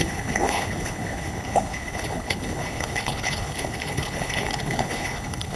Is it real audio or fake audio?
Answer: fake